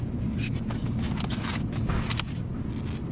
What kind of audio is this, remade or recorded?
recorded